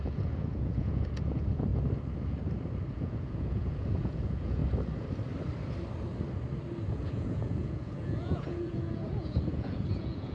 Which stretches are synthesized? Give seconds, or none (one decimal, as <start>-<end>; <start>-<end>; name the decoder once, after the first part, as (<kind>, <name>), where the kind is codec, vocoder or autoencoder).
0.0-1.7 (vocoder, Vocos); 2.9-4.6; 6.9-10.3